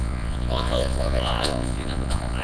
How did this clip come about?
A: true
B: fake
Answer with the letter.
B